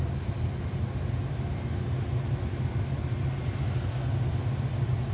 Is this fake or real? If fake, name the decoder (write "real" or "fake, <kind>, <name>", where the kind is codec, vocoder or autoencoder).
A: real